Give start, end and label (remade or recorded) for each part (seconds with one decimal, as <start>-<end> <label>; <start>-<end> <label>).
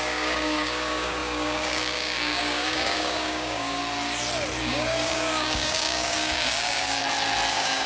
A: 0.0-3.8 remade; 3.8-4.6 recorded; 4.6-7.0 remade; 7.0-7.5 recorded; 7.5-7.9 remade